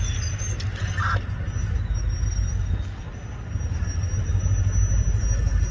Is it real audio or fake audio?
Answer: real